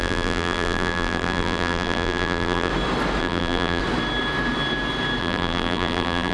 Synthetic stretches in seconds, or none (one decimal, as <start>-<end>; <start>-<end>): 0.0-2.7; 3.2-3.8; 5.2-6.3